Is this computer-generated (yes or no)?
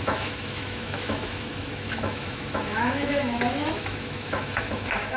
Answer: yes